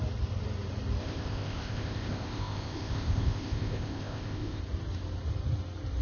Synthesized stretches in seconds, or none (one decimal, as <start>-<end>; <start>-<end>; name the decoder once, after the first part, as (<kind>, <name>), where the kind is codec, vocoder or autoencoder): 1.0-4.6 (codec, ZipCodec)